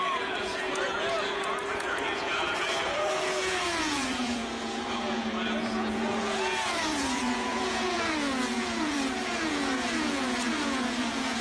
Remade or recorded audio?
remade